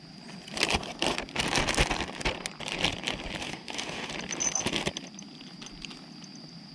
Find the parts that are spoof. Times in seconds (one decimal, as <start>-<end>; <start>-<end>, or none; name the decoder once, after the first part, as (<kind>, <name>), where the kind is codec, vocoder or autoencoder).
3.4-4.1 (autoencoder, DAC-VAE)